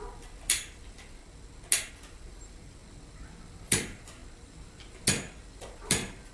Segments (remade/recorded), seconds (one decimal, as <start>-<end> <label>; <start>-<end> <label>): 0.0-1.2 remade; 1.2-1.9 recorded; 1.9-2.8 remade; 2.8-3.4 recorded; 3.4-4.2 remade; 4.2-5.7 recorded; 5.7-6.3 remade